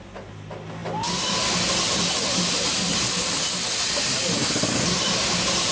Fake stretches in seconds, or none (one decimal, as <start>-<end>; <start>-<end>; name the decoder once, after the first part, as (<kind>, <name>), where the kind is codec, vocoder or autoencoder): none